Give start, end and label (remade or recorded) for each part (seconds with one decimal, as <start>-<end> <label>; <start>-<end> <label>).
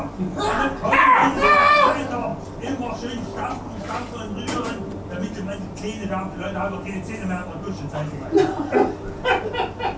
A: 0.0-10.0 recorded